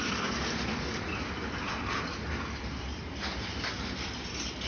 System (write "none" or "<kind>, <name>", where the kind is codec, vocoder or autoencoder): none